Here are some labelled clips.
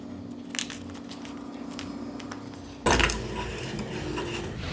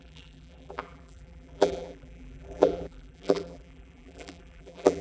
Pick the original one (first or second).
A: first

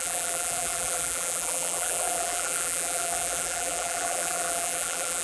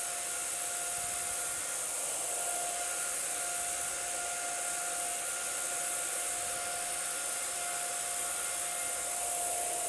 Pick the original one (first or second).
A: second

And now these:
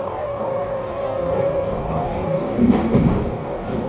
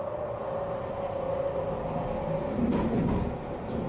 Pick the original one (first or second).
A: second